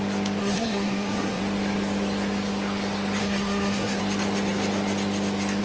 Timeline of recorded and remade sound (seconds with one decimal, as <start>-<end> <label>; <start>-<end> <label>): 0.0-0.4 recorded; 0.4-1.4 remade; 1.4-3.2 recorded; 3.2-4.0 remade; 4.0-5.6 recorded